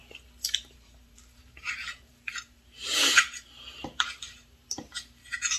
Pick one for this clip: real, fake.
fake